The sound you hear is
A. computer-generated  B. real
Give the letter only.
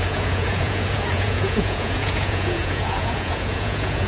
A